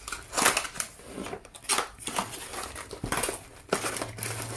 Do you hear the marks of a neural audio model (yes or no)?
no